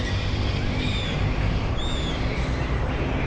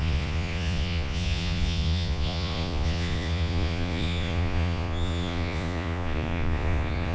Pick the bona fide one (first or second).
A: first